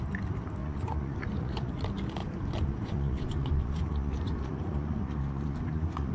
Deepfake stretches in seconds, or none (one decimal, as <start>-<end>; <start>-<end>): 0.6-1.7; 2.2-6.1